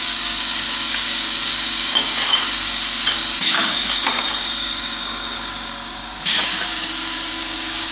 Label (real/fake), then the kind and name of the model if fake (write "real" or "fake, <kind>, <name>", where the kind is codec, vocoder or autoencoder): fake, codec, DAC